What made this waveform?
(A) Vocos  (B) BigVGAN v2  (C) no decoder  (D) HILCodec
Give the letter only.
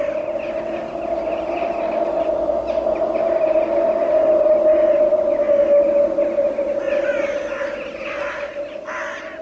C